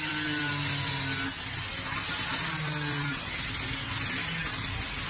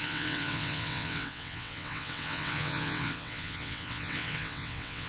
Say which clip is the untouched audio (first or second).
first